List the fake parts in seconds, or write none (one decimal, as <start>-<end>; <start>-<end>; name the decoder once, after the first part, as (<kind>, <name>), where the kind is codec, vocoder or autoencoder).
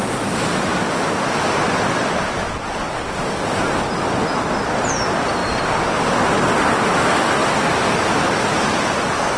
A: none